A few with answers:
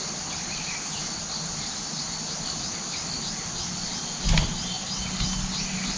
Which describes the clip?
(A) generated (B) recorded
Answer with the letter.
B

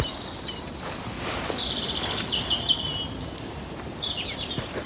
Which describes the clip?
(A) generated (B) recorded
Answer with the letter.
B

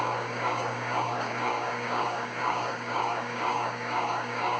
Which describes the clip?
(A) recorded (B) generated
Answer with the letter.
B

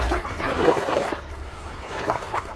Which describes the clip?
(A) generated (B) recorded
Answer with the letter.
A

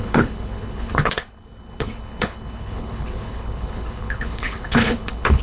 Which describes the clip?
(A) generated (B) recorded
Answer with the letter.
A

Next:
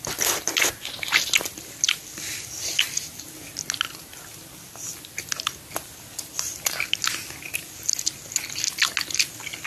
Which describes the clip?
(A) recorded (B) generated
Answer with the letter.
A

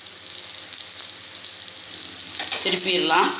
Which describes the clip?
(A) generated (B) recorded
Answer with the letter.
B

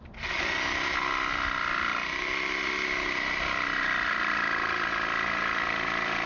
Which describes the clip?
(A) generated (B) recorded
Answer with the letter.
B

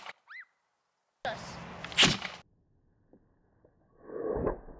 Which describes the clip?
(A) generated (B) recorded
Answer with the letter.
B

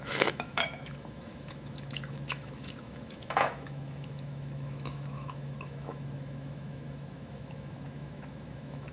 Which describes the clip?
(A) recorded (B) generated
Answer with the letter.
B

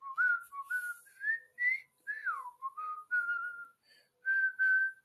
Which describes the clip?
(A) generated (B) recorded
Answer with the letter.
B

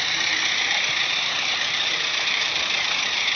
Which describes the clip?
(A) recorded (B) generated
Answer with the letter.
B